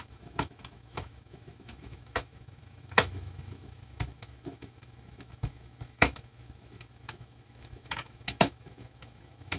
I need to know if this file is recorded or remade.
remade